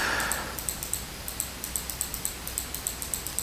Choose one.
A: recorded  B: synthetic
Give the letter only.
A